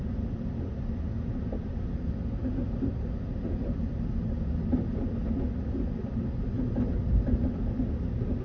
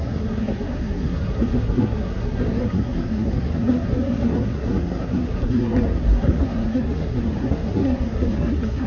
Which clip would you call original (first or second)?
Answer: first